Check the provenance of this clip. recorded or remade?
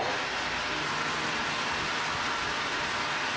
recorded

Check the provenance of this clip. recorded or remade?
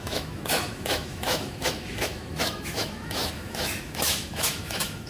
remade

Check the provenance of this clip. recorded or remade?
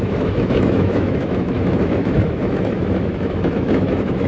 remade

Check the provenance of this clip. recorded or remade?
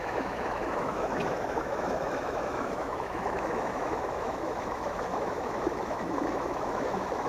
remade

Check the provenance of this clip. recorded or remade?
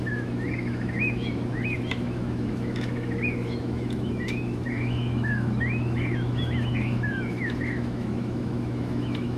remade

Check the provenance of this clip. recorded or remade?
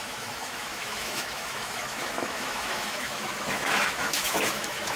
remade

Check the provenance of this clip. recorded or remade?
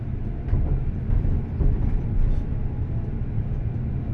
recorded